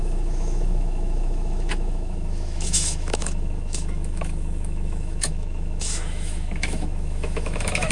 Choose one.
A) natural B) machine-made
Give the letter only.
B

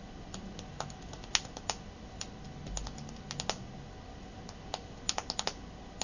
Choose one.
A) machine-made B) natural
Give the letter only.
B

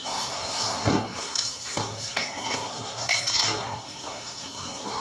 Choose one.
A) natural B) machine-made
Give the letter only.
B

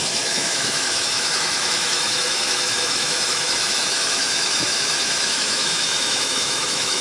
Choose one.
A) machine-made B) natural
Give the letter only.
A